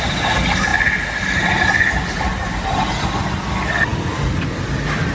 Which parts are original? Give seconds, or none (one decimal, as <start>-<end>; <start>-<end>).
0.0-5.1